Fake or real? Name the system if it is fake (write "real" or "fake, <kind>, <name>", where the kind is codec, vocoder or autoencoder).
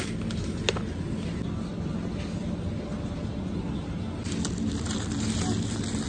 real